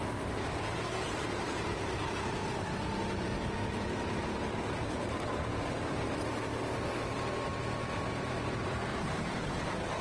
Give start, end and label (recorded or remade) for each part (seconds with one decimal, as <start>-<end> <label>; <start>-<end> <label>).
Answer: 0.0-3.3 remade; 3.3-8.1 recorded; 8.1-10.0 remade